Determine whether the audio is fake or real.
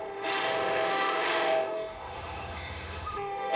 fake